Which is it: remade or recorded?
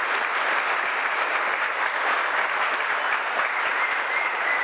recorded